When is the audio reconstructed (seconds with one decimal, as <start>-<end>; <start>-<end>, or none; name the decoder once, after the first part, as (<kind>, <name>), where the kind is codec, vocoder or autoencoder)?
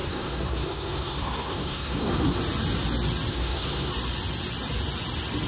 0.0-2.4 (codec, SNAC); 3.3-3.9